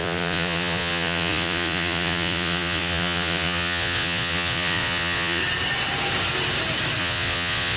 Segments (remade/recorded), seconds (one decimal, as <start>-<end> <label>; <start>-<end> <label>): 0.0-5.4 remade; 5.4-7.0 recorded; 7.0-7.8 remade